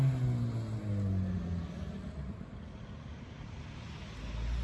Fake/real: real